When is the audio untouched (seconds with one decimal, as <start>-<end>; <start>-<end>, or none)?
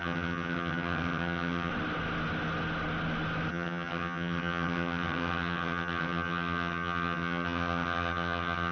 1.7-3.5